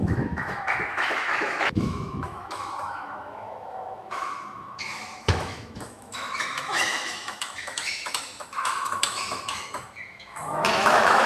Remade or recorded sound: remade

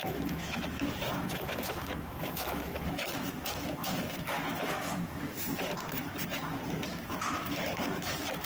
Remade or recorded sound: remade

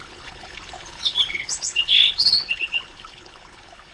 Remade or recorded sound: remade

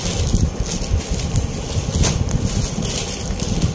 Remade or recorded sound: recorded